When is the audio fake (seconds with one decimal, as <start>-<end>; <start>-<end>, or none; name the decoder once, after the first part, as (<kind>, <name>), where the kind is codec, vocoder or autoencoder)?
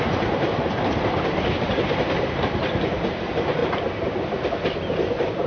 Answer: 1.7-2.6 (vocoder, BigVGAN v2); 3.6-4.1